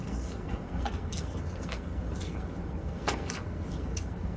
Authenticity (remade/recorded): remade